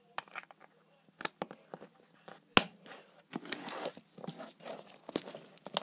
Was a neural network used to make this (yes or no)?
no